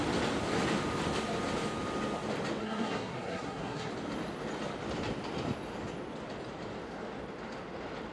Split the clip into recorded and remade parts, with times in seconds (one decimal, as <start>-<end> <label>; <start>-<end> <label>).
0.0-2.6 recorded; 2.6-3.9 remade; 3.9-8.1 recorded